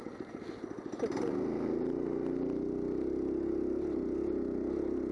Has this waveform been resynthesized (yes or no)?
no